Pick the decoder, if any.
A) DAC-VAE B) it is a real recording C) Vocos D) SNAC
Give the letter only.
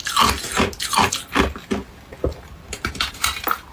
B